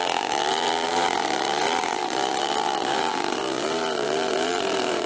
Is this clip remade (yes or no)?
yes